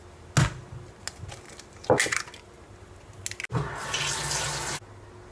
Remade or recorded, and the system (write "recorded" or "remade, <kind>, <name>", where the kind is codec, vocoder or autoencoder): recorded